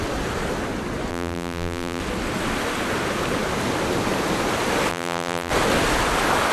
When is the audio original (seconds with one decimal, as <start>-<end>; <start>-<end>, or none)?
0.0-1.1; 2.0-4.9; 5.5-6.5